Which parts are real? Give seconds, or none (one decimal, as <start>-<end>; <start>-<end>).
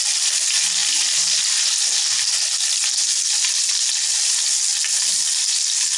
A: 0.0-6.0